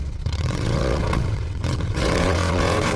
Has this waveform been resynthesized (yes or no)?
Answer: yes